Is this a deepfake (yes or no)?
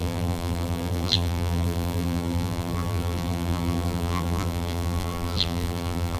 yes